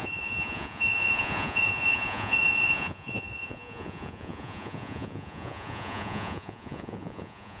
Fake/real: fake